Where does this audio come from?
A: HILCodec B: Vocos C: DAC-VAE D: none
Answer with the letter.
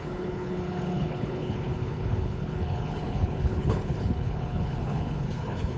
A